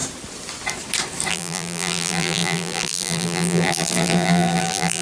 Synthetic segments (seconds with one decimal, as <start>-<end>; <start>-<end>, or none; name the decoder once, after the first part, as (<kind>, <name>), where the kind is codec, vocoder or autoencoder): 1.3-5.0 (vocoder, BigVGAN v2)